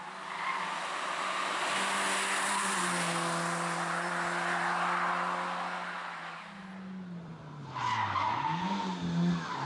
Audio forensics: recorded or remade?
recorded